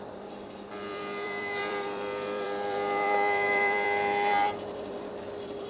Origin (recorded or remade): remade